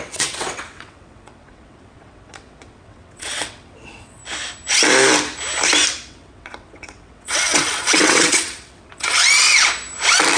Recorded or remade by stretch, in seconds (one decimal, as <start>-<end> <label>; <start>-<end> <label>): 0.0-4.2 remade; 4.2-6.1 recorded; 6.1-9.2 remade; 9.2-10.4 recorded